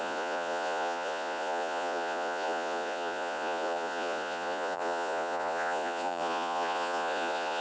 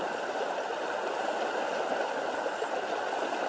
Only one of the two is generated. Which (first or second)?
first